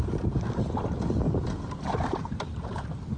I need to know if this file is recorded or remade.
recorded